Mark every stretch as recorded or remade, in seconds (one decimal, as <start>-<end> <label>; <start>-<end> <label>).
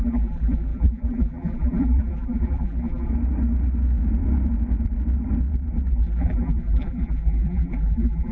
0.0-3.1 remade; 3.1-5.9 recorded; 5.9-8.3 remade